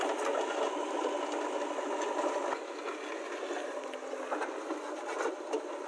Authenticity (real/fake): real